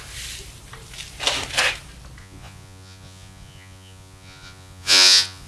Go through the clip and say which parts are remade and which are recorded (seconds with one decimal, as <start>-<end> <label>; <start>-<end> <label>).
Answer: 0.0-2.2 recorded; 2.2-5.5 remade